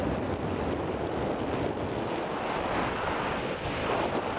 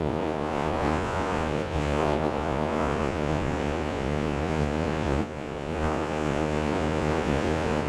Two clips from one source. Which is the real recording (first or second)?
first